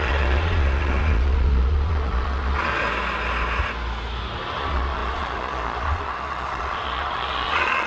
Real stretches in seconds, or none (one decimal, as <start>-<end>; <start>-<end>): 2.7-4.6